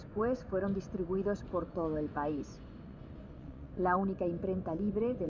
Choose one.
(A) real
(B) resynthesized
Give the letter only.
B